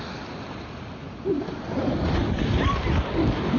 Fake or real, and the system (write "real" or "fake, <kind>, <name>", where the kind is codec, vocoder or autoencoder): real